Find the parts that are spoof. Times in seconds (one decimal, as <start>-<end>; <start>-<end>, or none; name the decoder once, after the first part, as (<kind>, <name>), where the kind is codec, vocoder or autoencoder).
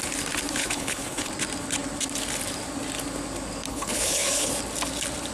0.6-1.3 (codec, HILCodec); 3.7-4.5